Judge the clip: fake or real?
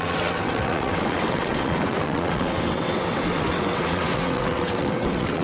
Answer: fake